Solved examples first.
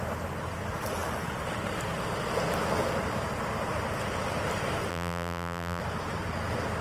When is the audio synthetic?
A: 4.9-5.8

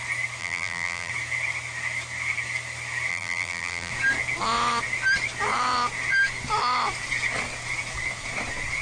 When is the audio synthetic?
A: 0.4-1.1; 3.1-3.9

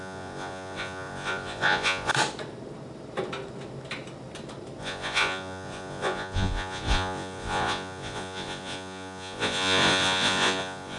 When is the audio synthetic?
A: 0.0-2.1; 4.8-11.0

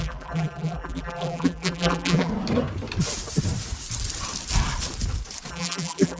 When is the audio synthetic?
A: 0.0-2.3; 5.5-6.2

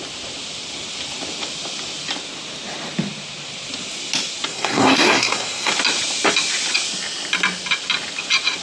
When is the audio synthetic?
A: 4.5-5.7